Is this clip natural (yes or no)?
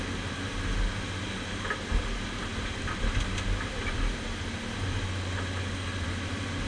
yes